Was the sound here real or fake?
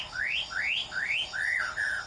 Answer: real